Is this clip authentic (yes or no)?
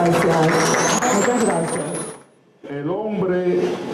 yes